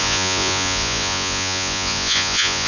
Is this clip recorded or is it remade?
remade